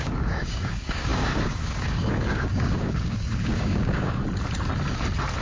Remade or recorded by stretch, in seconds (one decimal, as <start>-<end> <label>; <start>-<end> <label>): 0.0-4.2 remade; 4.2-5.4 recorded